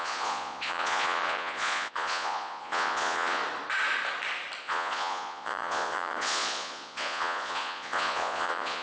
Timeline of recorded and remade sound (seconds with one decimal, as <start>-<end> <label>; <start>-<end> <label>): 0.0-3.4 remade; 3.4-4.6 recorded; 4.6-8.8 remade